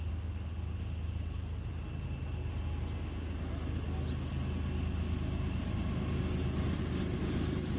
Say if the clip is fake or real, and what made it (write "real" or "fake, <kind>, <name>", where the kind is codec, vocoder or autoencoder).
real